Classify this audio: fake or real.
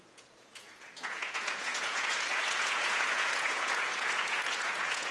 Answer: fake